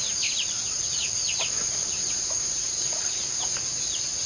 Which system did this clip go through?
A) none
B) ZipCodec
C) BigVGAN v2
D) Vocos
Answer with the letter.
C